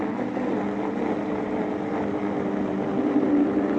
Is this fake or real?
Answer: real